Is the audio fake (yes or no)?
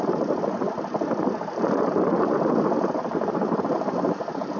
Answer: no